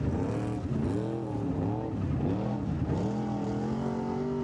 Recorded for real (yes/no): yes